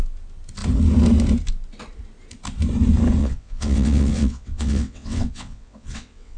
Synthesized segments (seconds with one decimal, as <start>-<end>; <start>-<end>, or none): 3.2-6.4